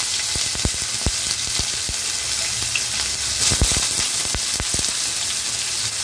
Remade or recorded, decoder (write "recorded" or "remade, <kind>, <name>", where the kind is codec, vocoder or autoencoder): recorded